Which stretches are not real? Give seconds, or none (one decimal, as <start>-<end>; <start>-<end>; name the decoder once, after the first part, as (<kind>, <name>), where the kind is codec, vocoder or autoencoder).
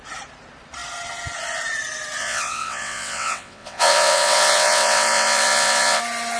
2.2-6.0 (vocoder, WaveNeXt)